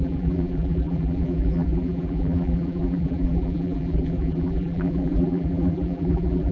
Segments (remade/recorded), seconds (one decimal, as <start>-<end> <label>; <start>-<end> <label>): 0.0-6.5 remade

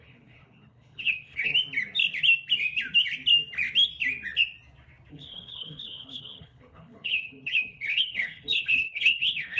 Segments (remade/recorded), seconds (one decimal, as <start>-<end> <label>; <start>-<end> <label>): 0.0-1.5 remade; 1.5-5.1 recorded; 5.1-9.6 remade

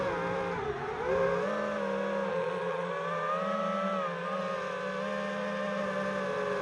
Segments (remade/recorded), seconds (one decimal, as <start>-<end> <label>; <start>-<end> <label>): 0.0-2.3 recorded; 2.3-2.9 remade; 2.9-6.6 recorded

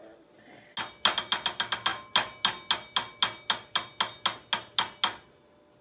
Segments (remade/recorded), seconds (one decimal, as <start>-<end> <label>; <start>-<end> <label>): 0.0-5.8 recorded

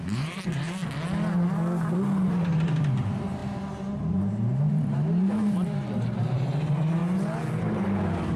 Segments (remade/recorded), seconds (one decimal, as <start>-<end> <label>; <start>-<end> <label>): 0.0-0.8 remade; 0.8-2.3 recorded; 2.3-7.0 remade; 7.0-7.6 recorded; 7.6-8.4 remade

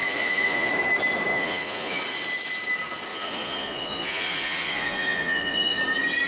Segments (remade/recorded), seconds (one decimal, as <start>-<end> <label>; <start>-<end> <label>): 0.0-0.7 remade; 0.7-1.3 recorded; 1.3-2.0 remade; 2.0-3.1 recorded; 3.1-5.8 remade; 5.8-6.3 recorded

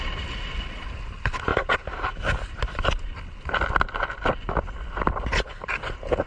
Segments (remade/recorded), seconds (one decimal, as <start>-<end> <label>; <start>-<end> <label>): 0.0-6.3 recorded

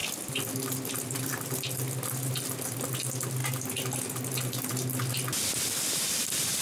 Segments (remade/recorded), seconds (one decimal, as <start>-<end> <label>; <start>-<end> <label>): 0.0-6.6 recorded